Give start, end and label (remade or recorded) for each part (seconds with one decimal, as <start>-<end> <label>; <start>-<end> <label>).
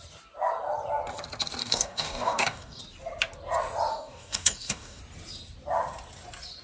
0.0-1.6 recorded; 1.6-2.8 remade; 2.8-3.9 recorded; 3.9-5.0 remade; 5.0-6.6 recorded